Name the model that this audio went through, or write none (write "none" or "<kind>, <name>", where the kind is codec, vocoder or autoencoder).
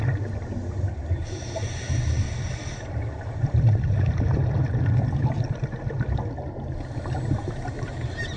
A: none